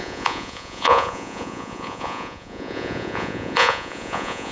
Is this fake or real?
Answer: fake